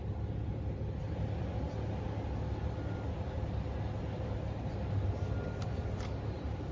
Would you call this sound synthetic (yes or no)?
no